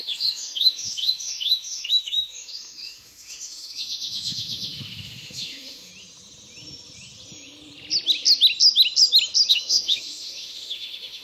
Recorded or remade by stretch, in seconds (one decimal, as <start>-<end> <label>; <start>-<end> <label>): 0.0-5.9 remade; 5.9-9.5 recorded; 9.5-11.2 remade